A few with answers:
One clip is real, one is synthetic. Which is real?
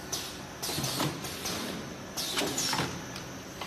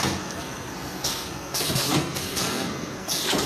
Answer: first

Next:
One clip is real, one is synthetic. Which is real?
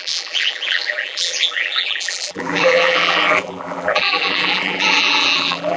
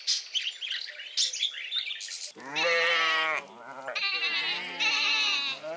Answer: second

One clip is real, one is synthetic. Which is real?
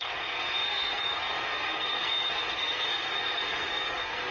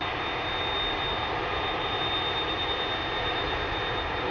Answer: second